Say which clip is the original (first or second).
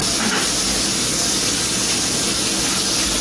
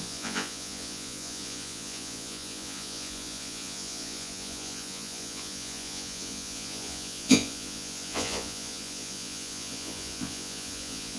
first